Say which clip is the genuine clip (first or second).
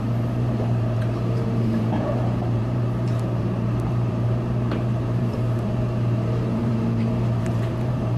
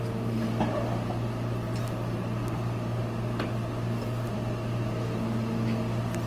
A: second